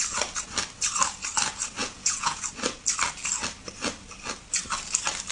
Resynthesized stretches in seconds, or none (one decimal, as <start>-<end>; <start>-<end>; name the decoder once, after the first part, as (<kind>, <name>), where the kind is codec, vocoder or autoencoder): 1.8-2.4 (vocoder, Vocos)